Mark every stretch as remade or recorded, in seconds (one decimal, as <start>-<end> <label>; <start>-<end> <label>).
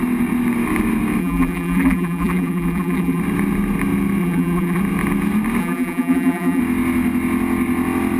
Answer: 0.0-1.2 recorded; 1.2-3.2 remade; 3.2-4.2 recorded; 4.2-4.8 remade; 4.8-5.6 recorded; 5.6-6.6 remade; 6.6-8.2 recorded